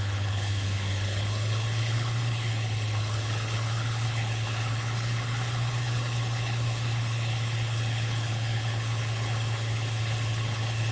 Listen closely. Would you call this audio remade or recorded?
remade